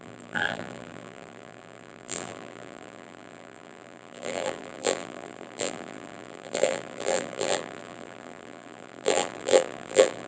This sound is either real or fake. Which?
fake